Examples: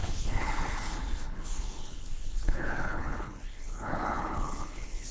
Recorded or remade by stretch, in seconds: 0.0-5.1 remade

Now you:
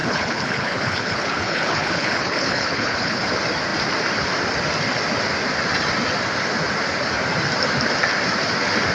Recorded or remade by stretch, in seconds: 0.0-3.3 remade; 3.3-8.9 recorded